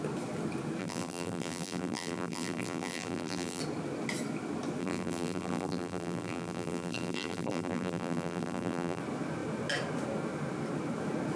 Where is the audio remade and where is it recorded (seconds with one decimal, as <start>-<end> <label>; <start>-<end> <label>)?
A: 0.0-0.8 recorded; 0.8-3.6 remade; 3.6-4.8 recorded; 4.8-9.0 remade; 9.0-11.4 recorded

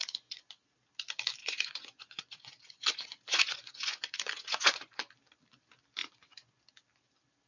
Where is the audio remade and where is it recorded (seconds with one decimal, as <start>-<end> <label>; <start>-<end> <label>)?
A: 0.0-0.5 remade; 0.5-1.4 recorded; 1.4-5.1 remade; 5.1-6.0 recorded; 6.0-6.6 remade; 6.6-7.5 recorded

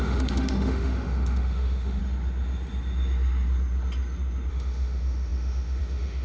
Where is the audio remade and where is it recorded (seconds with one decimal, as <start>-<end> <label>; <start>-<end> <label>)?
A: 0.0-2.0 remade; 2.0-4.5 recorded; 4.5-6.2 remade